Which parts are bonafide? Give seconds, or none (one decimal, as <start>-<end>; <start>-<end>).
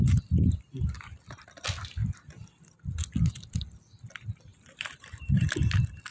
0.0-2.0; 2.8-4.5